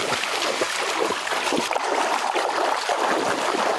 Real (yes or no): yes